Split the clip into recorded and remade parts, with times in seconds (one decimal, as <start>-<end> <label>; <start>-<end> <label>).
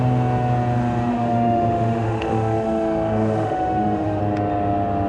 0.0-1.1 recorded; 1.1-4.2 remade; 4.2-5.1 recorded